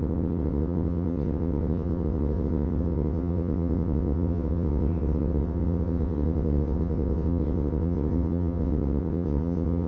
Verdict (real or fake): fake